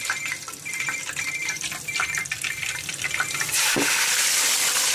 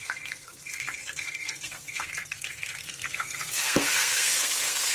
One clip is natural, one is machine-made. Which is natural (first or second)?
first